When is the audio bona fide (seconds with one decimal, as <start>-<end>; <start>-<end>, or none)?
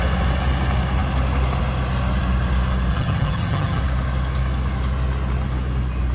0.0-2.9; 3.8-6.1